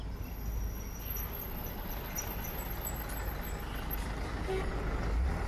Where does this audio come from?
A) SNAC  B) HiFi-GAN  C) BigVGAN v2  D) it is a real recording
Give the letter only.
D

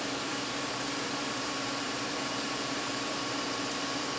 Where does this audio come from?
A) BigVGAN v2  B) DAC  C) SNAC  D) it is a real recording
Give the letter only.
A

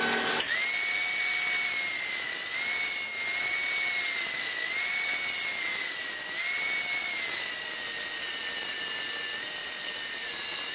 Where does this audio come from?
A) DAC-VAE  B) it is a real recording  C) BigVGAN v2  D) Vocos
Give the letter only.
B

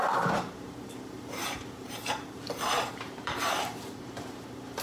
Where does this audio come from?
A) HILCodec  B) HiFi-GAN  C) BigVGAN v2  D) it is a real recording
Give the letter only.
C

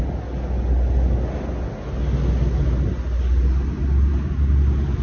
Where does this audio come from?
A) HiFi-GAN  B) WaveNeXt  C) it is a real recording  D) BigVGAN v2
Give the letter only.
C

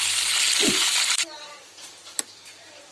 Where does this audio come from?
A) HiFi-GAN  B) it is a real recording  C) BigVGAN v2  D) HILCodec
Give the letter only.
C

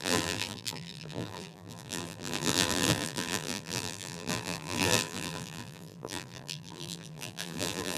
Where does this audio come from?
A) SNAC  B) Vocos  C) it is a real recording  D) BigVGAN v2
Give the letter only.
D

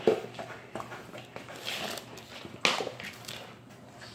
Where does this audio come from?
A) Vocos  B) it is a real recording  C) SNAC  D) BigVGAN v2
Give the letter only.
B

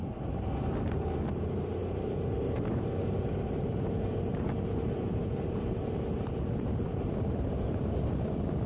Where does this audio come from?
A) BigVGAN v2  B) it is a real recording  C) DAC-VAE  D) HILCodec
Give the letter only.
A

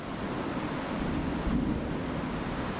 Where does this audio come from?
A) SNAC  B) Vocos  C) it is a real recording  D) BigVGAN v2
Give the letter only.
C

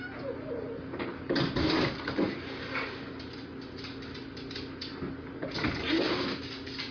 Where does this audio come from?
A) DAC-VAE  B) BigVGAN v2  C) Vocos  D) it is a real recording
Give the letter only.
D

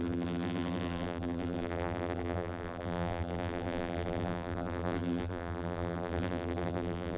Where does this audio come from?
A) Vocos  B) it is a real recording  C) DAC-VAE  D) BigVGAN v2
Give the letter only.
D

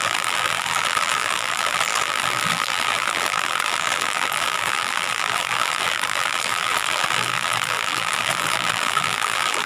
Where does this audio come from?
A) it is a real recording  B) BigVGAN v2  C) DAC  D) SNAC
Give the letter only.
B